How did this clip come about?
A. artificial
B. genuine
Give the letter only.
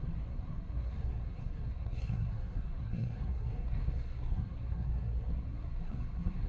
A